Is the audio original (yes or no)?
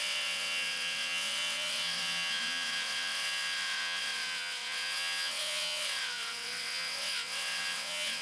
no